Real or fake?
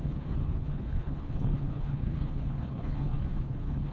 fake